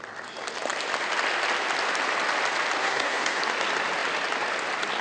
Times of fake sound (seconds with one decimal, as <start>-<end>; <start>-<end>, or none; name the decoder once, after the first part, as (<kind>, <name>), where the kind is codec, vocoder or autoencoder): 2.8-3.4 (codec, SNAC)